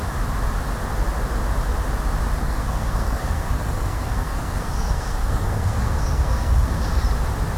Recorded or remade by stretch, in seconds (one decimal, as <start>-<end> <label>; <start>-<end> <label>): 0.0-2.4 recorded; 2.4-7.0 remade; 7.0-7.6 recorded